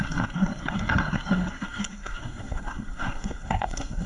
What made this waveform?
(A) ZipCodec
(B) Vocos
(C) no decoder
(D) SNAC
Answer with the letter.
D